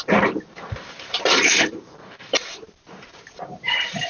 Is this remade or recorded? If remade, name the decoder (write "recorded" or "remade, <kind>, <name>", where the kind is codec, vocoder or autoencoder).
remade, vocoder, BigVGAN v2